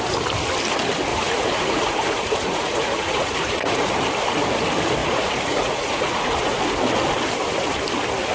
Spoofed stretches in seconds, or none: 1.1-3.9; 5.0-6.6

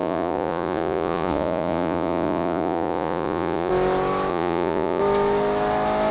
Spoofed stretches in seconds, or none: 0.0-3.7; 4.3-5.0